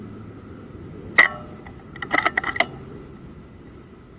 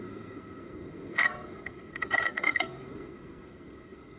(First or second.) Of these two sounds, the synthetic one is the second